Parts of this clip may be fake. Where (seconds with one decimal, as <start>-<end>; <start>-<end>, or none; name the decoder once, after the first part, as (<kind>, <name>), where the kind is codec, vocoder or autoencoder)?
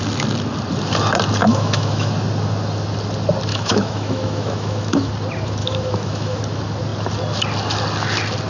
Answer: 1.4-2.1 (autoencoder, DAC-VAE); 3.5-5.1; 5.6-6.4